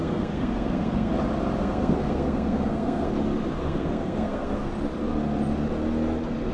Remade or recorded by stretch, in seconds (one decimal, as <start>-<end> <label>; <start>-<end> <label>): 0.0-1.1 remade; 1.1-1.6 recorded; 1.6-3.1 remade; 3.1-3.6 recorded; 3.6-4.7 remade; 4.7-6.5 recorded

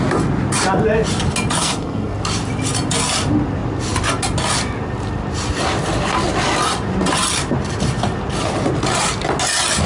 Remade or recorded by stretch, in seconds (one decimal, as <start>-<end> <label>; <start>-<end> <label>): 0.0-1.6 recorded; 1.6-2.2 remade; 2.2-9.9 recorded

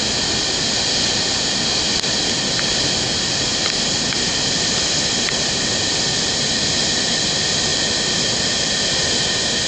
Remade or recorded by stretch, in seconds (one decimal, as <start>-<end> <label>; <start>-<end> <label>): 0.0-3.5 recorded; 3.5-4.8 remade; 4.8-7.7 recorded; 7.7-8.4 remade; 8.4-9.7 recorded